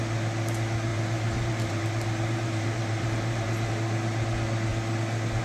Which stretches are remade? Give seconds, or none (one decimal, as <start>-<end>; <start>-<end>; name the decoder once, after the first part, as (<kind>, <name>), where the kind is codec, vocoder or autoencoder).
0.9-3.7 (vocoder, BigVGAN v2)